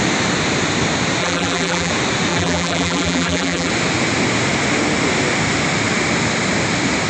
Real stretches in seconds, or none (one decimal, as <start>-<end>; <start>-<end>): 0.0-1.2; 1.9-2.3; 3.7-7.1